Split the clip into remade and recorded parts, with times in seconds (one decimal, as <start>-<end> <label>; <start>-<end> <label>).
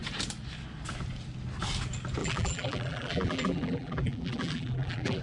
0.0-2.2 recorded; 2.2-5.2 remade